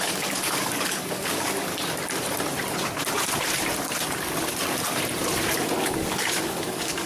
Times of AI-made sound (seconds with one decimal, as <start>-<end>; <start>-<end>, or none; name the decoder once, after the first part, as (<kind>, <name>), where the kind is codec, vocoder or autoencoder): 0.0-1.7 (codec, DAC); 5.9-7.1